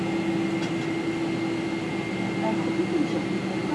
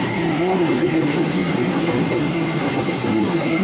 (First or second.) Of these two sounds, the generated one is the second